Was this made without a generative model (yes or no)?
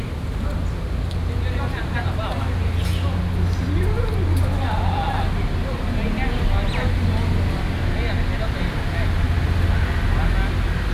yes